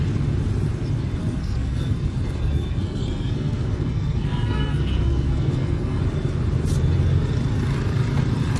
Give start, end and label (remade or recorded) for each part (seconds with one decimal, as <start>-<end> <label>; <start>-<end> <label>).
0.0-1.2 recorded; 1.2-6.0 remade; 6.0-8.6 recorded